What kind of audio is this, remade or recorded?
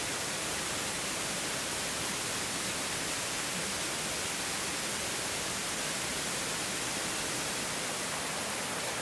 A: recorded